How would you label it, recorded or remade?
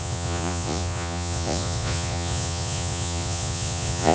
remade